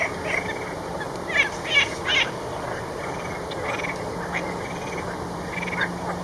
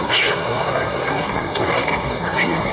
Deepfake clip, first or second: second